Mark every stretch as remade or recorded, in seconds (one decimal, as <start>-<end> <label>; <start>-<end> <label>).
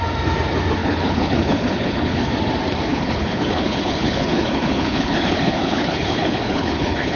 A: 0.0-0.8 recorded; 0.8-2.3 remade; 2.3-2.9 recorded; 2.9-7.2 remade